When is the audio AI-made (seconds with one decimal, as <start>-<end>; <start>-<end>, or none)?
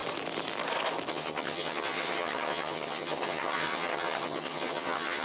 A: 1.1-5.2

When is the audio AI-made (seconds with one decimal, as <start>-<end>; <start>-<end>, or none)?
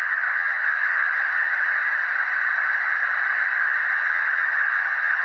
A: 0.0-1.5; 3.9-5.2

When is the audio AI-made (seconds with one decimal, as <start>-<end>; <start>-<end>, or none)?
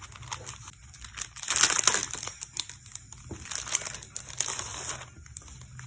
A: none